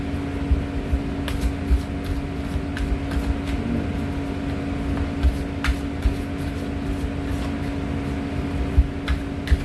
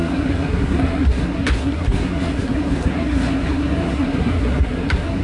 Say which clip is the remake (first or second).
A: second